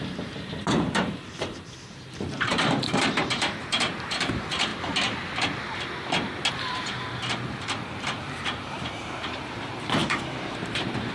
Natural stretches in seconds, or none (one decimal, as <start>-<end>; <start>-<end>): 4.7-6.5